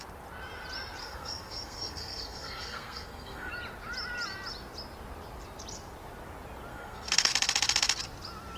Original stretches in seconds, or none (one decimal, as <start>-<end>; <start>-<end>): 0.0-1.0; 3.5-6.7; 7.3-8.6